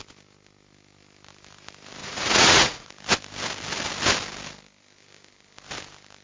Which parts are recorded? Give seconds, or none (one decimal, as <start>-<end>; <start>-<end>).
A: 0.0-2.0; 2.9-6.2